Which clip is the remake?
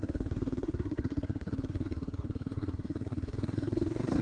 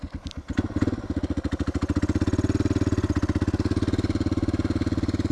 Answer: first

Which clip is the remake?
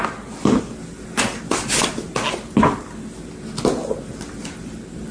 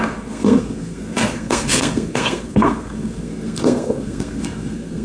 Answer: second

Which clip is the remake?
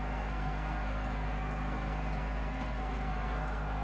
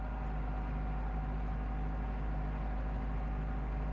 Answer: first